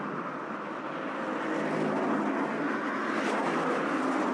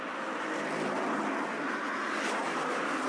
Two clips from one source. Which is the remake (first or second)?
second